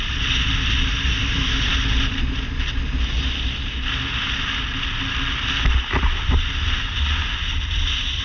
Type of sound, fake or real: real